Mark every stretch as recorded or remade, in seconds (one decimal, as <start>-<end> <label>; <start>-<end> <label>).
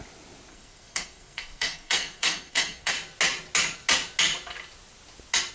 0.0-0.5 recorded; 0.5-2.9 remade; 2.9-5.5 recorded